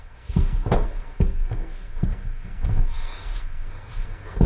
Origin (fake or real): fake